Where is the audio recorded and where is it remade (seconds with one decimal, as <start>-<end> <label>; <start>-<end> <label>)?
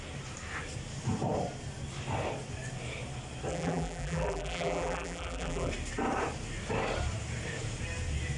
0.0-3.5 recorded; 3.5-5.7 remade; 5.7-8.4 recorded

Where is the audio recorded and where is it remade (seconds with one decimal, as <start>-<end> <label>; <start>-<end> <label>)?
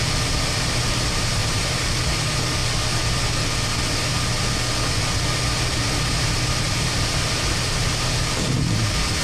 0.0-2.6 remade; 2.6-5.2 recorded; 5.2-9.2 remade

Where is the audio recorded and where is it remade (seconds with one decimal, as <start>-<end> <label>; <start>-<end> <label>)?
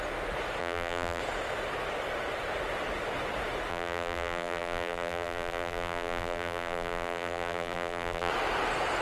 0.0-0.6 recorded; 0.6-1.2 remade; 1.2-3.7 recorded; 3.7-8.3 remade; 8.3-9.0 recorded